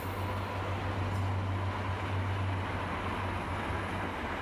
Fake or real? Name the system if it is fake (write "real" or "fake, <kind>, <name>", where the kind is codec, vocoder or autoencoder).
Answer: real